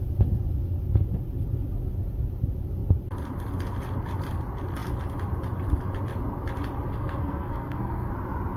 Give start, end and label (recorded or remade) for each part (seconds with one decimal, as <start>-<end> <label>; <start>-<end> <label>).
0.0-6.9 recorded; 6.9-8.1 remade; 8.1-8.6 recorded